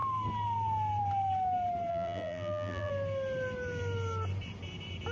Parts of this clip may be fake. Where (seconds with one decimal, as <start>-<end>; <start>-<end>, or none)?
1.9-2.9